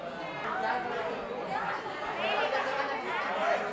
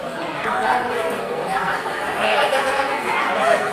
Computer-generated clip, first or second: second